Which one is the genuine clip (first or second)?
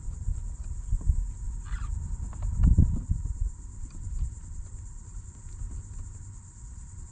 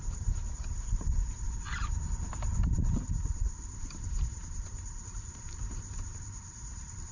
first